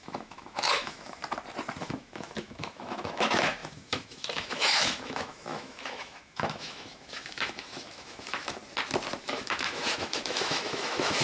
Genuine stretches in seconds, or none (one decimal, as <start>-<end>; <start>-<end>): 1.2-1.8; 8.6-9.2